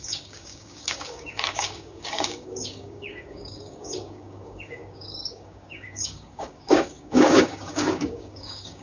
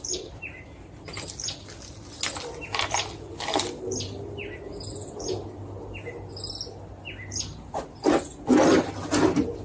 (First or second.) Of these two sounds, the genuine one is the second